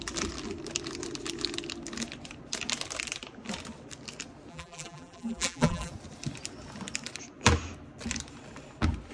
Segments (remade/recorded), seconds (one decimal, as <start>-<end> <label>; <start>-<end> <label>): 0.0-4.5 recorded; 4.5-5.9 remade; 5.9-9.1 recorded

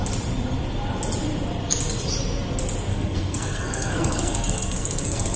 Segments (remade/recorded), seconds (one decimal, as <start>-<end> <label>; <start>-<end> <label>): 0.0-2.9 recorded; 2.9-5.4 remade

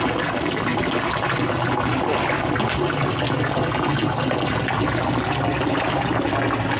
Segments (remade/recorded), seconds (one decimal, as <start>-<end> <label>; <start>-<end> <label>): 0.0-6.8 recorded

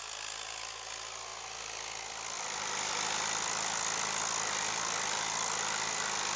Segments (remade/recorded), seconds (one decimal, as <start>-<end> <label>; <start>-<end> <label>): 0.0-6.4 recorded